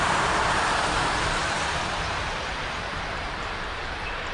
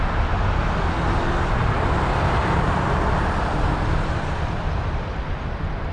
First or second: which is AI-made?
first